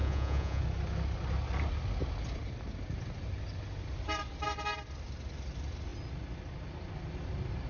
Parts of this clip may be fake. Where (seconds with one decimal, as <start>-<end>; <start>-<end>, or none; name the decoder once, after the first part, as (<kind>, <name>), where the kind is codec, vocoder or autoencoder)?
0.0-0.6 (vocoder, Vocos)